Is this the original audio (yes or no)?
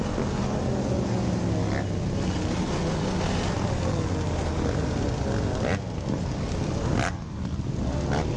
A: yes